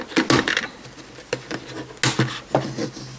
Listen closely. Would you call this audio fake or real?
real